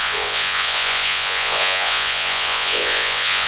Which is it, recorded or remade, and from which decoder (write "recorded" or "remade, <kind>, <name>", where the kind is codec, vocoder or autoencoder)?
remade, vocoder, Vocos